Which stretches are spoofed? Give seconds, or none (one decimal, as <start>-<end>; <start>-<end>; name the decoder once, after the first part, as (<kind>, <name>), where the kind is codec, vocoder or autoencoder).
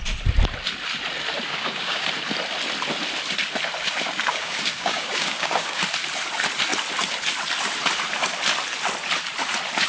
1.5-2.1 (codec, DAC); 4.3-5.8